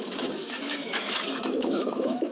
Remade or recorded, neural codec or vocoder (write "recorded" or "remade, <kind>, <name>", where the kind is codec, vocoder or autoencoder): remade, autoencoder, DAC-VAE